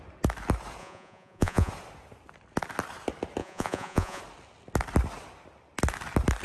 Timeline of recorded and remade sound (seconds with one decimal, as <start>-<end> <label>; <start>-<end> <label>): 0.0-0.8 recorded; 0.8-1.7 remade; 1.7-3.4 recorded; 3.4-4.2 remade; 4.2-6.4 recorded